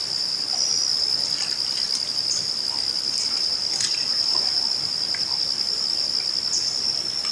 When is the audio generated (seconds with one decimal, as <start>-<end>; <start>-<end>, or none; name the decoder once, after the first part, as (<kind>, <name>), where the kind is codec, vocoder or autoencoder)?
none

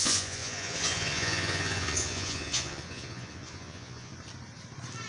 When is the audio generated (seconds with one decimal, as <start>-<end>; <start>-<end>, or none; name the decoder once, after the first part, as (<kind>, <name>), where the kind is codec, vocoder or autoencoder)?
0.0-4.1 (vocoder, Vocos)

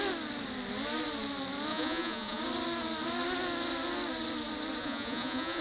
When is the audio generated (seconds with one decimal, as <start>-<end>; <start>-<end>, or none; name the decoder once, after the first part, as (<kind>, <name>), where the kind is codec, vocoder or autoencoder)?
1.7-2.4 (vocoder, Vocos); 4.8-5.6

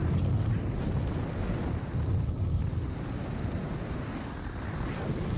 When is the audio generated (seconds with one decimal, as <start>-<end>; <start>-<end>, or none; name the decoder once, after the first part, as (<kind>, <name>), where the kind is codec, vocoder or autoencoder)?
none

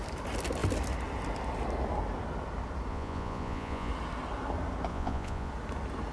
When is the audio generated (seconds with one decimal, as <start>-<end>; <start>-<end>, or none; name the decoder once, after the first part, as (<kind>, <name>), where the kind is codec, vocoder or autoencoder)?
2.9-3.9 (vocoder, Vocos); 4.9-5.5